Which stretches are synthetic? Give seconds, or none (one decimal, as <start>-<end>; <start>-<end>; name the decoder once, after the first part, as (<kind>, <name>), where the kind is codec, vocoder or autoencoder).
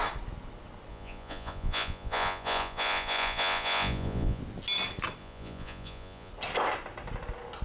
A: 0.9-4.4 (vocoder, Vocos); 5.2-6.3